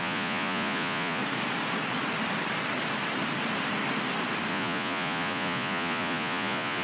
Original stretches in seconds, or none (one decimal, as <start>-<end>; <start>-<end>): 1.2-4.5